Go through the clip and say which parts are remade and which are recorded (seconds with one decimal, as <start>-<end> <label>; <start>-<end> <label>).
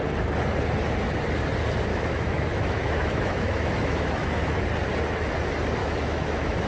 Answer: 0.0-1.9 recorded; 1.9-4.6 remade; 4.6-5.8 recorded; 5.8-6.7 remade